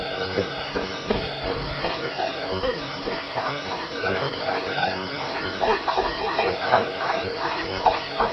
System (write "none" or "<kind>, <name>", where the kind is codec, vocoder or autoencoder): codec, SNAC